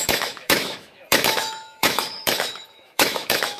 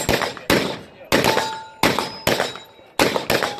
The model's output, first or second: first